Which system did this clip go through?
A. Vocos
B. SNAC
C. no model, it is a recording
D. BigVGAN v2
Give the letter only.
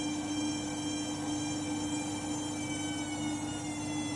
C